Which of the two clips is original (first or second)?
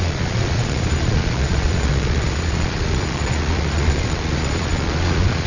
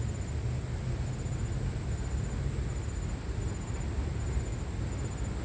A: second